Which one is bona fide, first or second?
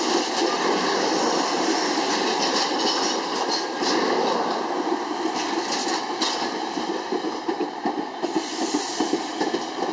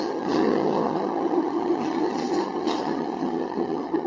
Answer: first